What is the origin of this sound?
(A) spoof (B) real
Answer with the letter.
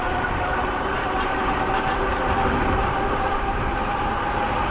A